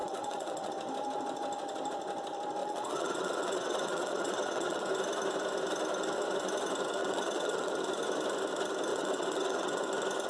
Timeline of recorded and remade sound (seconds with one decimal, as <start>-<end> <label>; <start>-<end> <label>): 0.0-0.7 remade; 0.7-2.6 recorded; 2.6-4.8 remade; 4.8-7.0 recorded; 7.0-7.7 remade; 7.7-8.9 recorded; 8.9-9.8 remade; 9.8-10.3 recorded